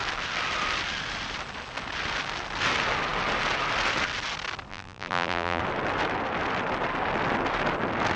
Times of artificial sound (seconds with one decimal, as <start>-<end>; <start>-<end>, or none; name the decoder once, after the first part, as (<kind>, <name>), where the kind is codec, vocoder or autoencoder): 4.7-5.6 (vocoder, BigVGAN v2)